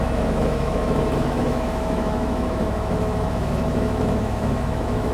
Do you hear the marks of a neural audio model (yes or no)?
yes